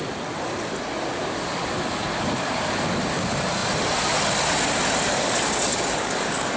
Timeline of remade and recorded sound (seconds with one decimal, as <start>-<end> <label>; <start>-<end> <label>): 0.0-5.7 recorded; 5.7-6.6 remade

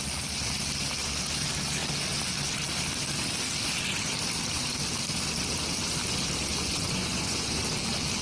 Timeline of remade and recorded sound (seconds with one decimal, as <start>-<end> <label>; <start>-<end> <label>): 0.0-6.5 recorded; 6.5-7.6 remade; 7.6-8.2 recorded

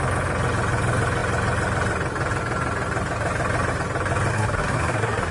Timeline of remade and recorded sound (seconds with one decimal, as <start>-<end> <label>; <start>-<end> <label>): 0.0-4.3 recorded; 4.3-5.3 remade

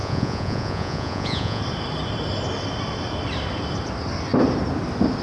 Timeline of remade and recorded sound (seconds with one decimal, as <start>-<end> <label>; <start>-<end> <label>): 0.0-1.6 remade; 1.6-5.2 recorded

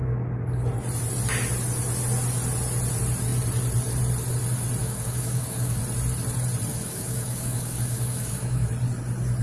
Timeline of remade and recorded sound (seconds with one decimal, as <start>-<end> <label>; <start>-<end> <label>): 0.0-4.8 recorded; 4.8-5.8 remade; 5.8-6.7 recorded; 6.7-8.7 remade; 8.7-9.4 recorded

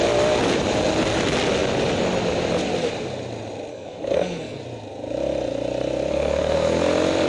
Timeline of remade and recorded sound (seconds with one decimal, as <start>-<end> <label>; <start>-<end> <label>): 0.0-3.7 recorded; 3.7-4.6 remade; 4.6-6.1 recorded; 6.1-6.8 remade; 6.8-7.3 recorded